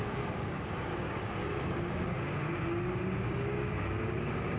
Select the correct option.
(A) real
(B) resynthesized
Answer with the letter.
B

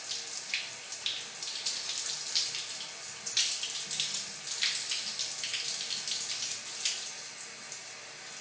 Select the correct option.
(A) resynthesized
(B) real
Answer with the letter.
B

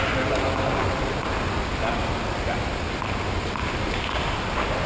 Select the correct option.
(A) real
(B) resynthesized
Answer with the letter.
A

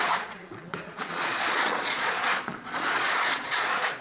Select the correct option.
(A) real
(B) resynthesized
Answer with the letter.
B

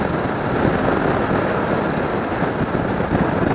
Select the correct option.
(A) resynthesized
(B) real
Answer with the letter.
B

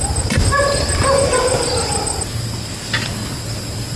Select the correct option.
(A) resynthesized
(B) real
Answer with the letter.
B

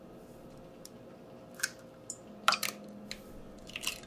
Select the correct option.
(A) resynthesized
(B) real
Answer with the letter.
B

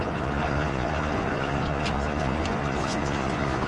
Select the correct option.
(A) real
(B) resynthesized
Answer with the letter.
B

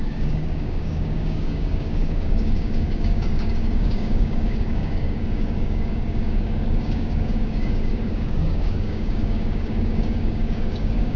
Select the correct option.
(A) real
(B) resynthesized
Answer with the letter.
B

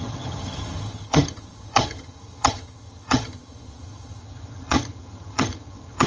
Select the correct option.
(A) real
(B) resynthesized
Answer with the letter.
B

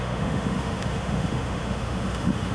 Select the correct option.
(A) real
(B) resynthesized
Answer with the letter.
B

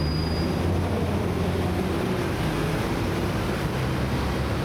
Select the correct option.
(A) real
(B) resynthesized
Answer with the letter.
A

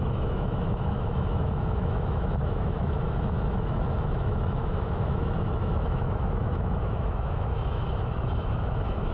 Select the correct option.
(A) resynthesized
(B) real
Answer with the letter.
A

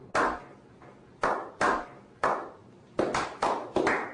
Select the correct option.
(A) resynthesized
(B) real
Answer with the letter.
B